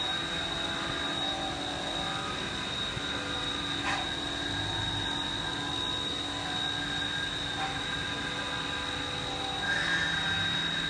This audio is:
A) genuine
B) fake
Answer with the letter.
A